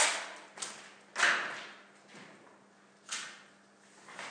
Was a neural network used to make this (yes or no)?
no